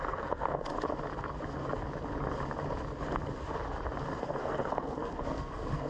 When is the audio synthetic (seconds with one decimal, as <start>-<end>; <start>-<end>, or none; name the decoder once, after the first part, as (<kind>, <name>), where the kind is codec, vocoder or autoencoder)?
0.0-0.7 (codec, SNAC); 4.2-5.9